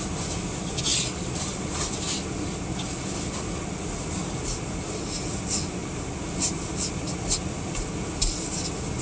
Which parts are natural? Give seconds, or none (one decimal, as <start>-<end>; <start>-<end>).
0.0-9.0